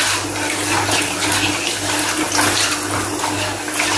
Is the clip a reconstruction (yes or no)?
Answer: no